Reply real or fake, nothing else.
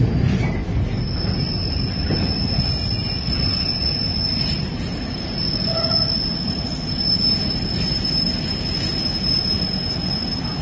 real